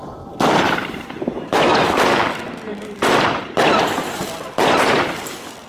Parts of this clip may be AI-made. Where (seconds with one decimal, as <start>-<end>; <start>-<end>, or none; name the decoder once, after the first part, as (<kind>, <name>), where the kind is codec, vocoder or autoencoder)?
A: 0.0-1.8 (vocoder, BigVGAN v2); 2.7-3.4; 4.2-4.9